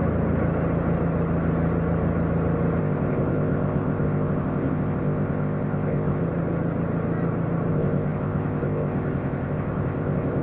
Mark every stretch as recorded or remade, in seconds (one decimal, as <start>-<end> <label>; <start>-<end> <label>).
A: 0.0-2.8 recorded; 2.8-6.2 remade; 6.2-7.7 recorded; 7.7-10.4 remade